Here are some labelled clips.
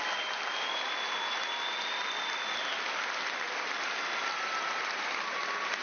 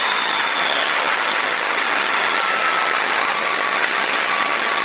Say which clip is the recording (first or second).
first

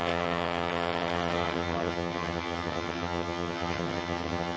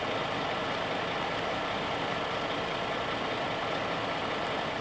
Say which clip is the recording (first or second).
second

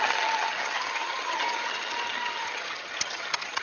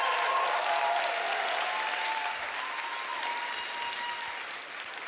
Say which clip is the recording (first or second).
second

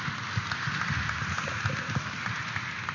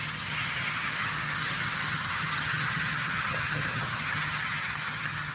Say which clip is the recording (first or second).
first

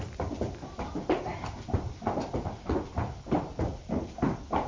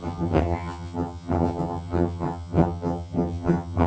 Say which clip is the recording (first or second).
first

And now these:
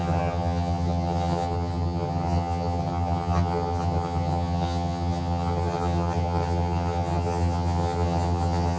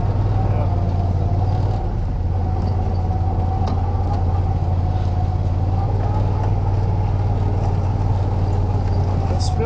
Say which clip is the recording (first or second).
second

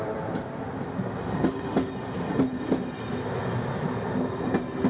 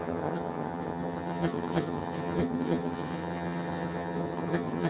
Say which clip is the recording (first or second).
first